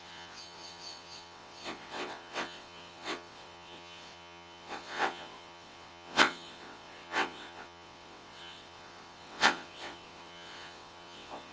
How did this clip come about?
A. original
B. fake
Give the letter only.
B